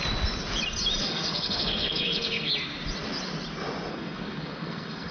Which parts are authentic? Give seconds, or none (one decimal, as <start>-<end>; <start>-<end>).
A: 0.0-1.0; 2.5-3.9